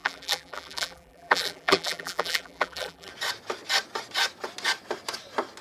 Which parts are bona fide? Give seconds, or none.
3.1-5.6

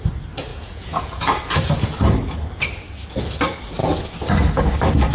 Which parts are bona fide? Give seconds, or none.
0.0-0.5; 1.4-5.1

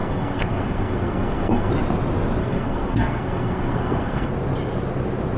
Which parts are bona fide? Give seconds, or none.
1.7-2.4; 4.3-5.4